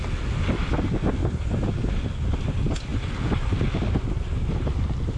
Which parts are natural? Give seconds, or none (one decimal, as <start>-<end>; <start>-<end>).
0.0-5.2